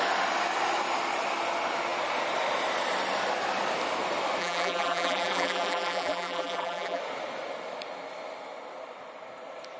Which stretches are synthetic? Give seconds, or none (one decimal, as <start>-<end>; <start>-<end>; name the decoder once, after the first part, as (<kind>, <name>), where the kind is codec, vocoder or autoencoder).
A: 4.4-7.0 (vocoder, BigVGAN v2)